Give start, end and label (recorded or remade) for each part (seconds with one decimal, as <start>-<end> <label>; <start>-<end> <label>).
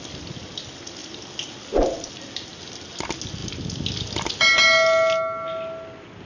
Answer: 0.0-6.3 recorded